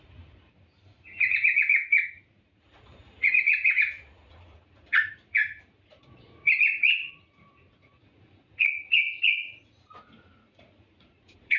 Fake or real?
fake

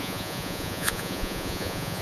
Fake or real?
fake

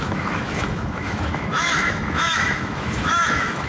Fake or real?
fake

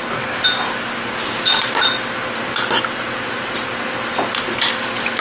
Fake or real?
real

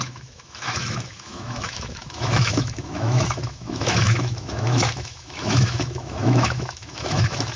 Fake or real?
fake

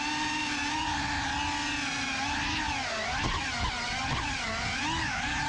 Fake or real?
real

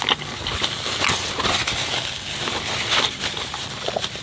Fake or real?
real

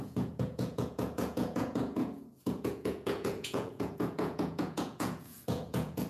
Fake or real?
fake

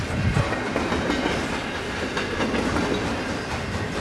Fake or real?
fake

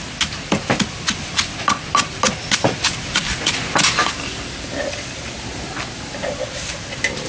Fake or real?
real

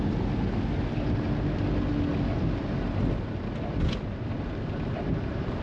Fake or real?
real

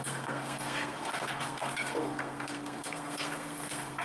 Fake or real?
fake